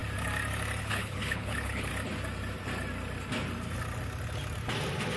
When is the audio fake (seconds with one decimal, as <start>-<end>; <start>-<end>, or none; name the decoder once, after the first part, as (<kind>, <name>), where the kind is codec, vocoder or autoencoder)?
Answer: 0.8-1.9 (codec, HILCodec)